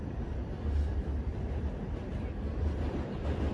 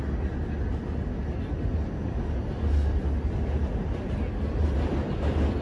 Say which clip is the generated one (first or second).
first